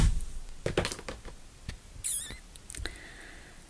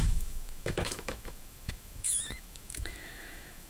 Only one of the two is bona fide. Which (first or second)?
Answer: first